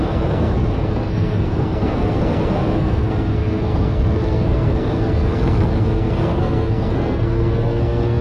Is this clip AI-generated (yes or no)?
yes